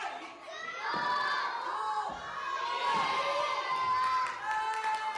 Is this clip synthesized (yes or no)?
no